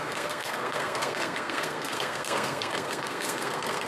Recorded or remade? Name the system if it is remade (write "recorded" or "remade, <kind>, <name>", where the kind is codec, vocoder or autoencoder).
remade, codec, SNAC